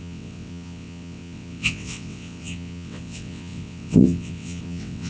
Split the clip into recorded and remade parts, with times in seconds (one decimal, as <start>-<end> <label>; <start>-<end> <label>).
0.0-5.1 remade